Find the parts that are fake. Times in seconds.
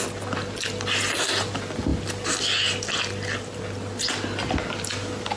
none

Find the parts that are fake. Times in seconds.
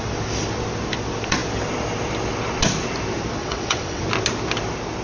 3.4-4.0 (vocoder, WaveNeXt)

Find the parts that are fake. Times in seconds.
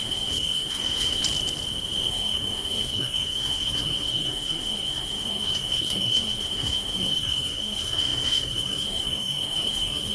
0.0-1.2 (codec, SNAC); 2.1-10.1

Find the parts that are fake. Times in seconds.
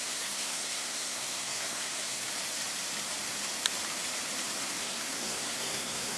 0.0-2.2 (codec, SNAC); 4.8-6.2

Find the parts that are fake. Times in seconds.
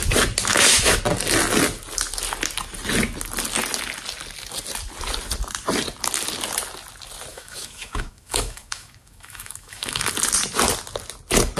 0.5-1.0 (autoencoder, DAC-VAE); 7.3-10.1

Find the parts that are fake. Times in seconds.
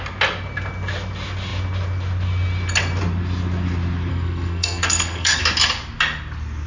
4.1-5.4 (codec, SNAC)